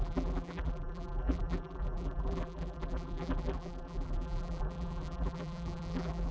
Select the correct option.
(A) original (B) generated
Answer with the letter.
B